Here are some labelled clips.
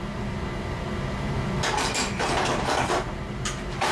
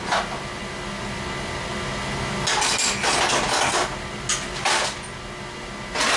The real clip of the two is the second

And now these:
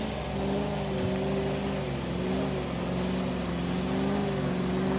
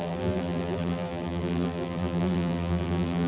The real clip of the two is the first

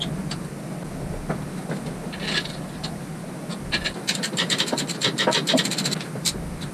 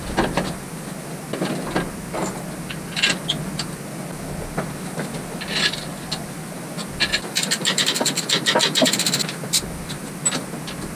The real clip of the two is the second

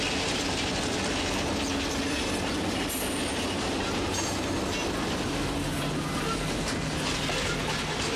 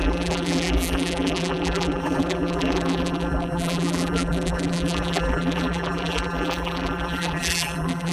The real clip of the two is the first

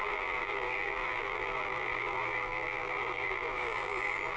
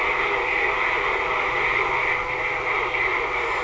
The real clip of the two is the second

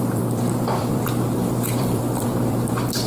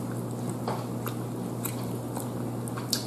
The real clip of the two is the second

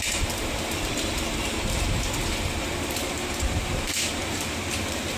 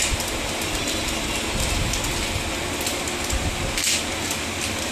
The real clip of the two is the second